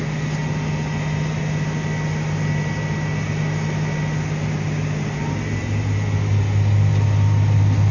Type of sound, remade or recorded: recorded